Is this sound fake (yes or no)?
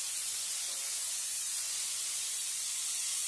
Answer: yes